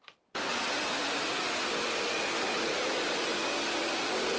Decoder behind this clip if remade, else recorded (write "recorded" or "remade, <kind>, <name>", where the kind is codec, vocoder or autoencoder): recorded